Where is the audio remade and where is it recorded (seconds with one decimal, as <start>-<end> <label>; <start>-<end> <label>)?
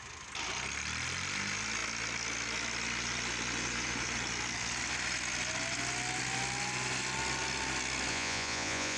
0.0-8.1 recorded; 8.1-9.0 remade